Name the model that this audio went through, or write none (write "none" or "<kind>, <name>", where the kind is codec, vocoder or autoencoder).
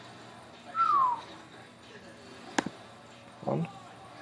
none